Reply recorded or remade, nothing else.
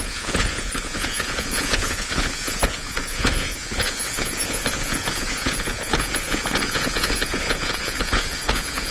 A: remade